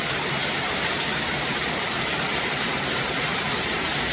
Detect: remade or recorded remade